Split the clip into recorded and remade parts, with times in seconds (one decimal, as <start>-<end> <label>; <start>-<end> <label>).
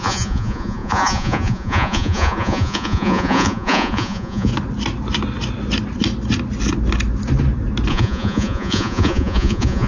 0.0-4.5 remade; 4.5-7.9 recorded; 7.9-9.9 remade